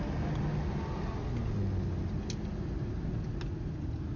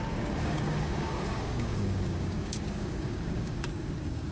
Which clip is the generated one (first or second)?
second